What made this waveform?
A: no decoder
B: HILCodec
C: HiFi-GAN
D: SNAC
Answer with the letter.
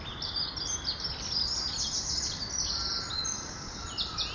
A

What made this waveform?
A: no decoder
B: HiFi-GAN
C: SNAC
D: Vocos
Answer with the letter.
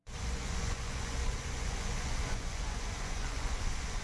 D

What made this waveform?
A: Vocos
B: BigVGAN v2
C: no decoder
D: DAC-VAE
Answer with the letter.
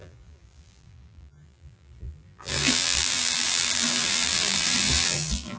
B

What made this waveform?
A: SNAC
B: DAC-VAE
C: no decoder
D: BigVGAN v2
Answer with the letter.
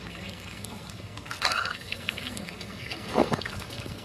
A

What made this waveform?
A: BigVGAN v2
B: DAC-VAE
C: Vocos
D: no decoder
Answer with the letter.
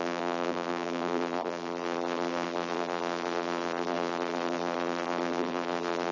A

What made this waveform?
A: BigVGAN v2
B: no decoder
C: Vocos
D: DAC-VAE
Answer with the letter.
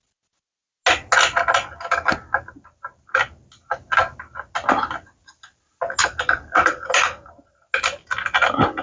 B